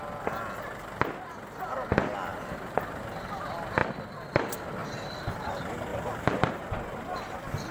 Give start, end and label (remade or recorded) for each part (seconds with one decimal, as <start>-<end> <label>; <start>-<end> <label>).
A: 0.0-2.3 recorded; 2.3-3.0 remade; 3.0-5.9 recorded; 5.9-6.5 remade; 6.5-7.7 recorded